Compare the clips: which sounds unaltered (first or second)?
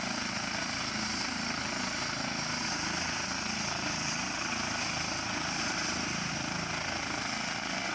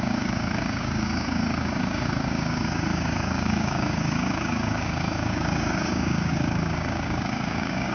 first